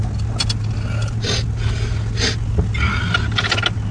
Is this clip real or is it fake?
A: real